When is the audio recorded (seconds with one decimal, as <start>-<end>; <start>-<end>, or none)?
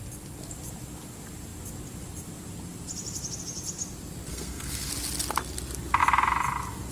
0.0-4.3; 4.9-6.9